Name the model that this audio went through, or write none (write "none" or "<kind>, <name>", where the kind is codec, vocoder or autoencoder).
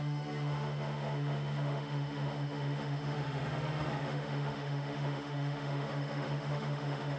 autoencoder, DAC-VAE